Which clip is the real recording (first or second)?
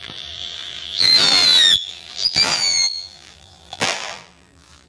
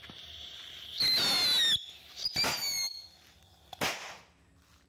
second